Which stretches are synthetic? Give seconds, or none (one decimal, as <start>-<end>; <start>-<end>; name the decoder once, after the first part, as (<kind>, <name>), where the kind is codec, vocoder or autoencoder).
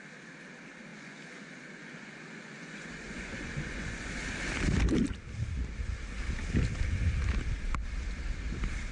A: 0.9-4.1 (vocoder, Vocos)